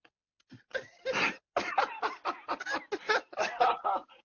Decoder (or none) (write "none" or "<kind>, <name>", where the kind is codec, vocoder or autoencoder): none